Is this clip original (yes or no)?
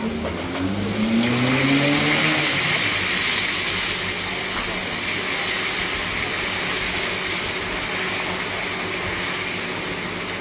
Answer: yes